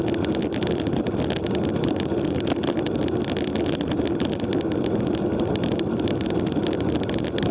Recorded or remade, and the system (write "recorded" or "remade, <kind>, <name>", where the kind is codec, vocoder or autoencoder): recorded